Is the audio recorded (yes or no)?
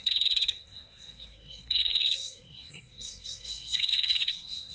no